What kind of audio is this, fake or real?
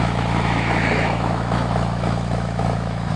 fake